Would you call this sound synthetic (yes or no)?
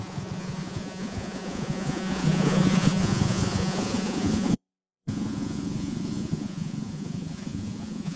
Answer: yes